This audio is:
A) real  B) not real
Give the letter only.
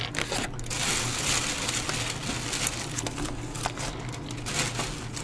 A